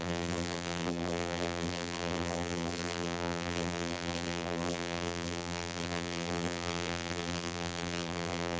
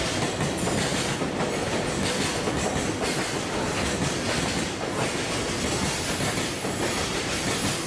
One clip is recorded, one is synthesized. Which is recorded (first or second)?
second